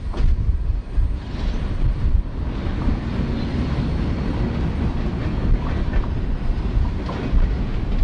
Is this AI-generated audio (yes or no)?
no